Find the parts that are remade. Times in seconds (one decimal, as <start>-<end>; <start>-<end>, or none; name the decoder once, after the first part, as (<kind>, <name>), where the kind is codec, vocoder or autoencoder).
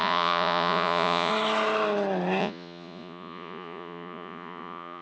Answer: 0.0-1.3 (vocoder, Vocos); 2.4-5.0